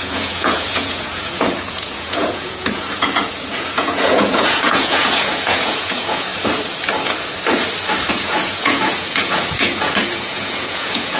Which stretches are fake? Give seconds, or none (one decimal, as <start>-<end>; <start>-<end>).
0.0-6.3; 8.1-11.2